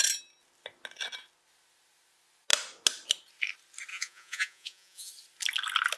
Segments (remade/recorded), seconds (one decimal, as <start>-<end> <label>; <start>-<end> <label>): 0.0-3.9 recorded; 3.9-5.1 remade; 5.1-6.0 recorded